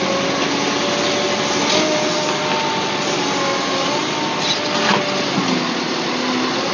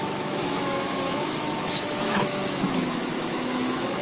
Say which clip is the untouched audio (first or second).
first